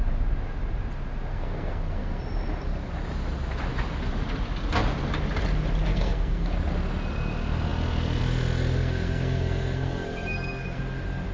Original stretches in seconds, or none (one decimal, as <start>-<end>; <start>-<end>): 0.0-1.3; 2.2-5.9; 6.5-8.8; 10.8-11.3